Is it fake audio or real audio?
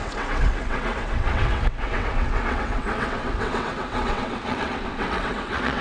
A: fake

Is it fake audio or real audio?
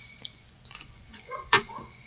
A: fake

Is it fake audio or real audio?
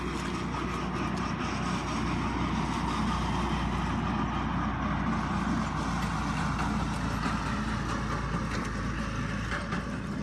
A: real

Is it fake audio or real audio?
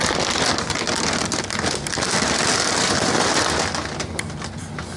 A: real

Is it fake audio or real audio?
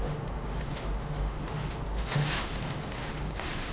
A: fake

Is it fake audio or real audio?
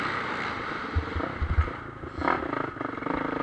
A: real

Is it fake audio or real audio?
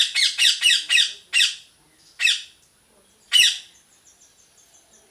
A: real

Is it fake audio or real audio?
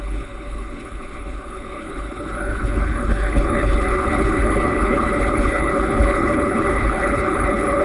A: fake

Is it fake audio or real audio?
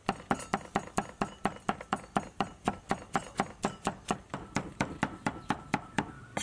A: fake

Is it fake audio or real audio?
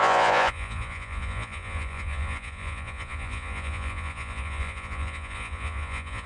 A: fake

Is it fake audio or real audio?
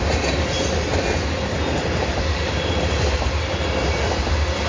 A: real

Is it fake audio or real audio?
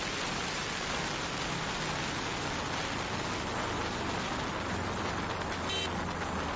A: real